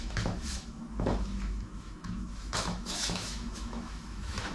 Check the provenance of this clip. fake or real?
fake